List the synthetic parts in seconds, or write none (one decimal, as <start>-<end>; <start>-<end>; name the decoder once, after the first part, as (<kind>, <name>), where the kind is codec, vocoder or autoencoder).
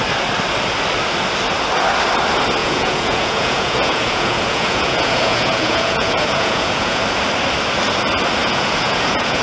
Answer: 2.6-7.0 (vocoder, Vocos); 8.4-9.4